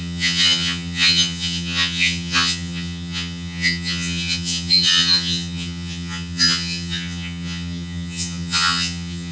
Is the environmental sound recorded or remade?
remade